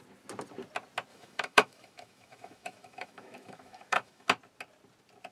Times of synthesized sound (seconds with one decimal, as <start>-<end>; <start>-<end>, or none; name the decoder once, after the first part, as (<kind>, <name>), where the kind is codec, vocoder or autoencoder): 1.1-4.3 (autoencoder, DAC-VAE)

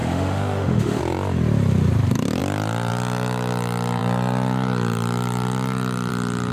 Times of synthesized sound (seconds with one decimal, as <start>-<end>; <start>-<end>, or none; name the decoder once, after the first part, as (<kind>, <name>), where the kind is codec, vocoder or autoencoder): 0.0-1.0 (autoencoder, DAC-VAE)

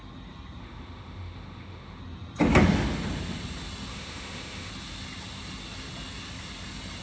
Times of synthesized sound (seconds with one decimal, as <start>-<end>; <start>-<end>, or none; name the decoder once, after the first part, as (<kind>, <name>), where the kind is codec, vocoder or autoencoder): 0.6-2.0 (autoencoder, DAC-VAE); 3.9-4.7

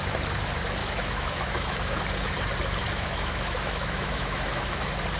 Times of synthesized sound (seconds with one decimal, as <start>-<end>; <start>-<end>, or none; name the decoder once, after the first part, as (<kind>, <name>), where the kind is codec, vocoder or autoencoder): 0.8-2.0 (autoencoder, DAC-VAE); 2.8-4.6

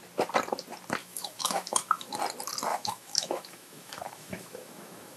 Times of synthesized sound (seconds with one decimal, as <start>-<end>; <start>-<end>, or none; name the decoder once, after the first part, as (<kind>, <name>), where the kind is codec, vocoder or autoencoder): 1.0-2.1 (autoencoder, DAC-VAE); 2.7-5.2

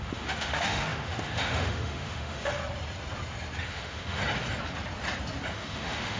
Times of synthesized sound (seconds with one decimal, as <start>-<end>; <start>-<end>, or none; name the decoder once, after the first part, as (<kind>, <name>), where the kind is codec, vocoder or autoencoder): 0.0-2.6 (autoencoder, DAC-VAE); 3.6-4.2; 5.5-6.2